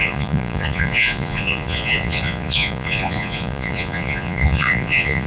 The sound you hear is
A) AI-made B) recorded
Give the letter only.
A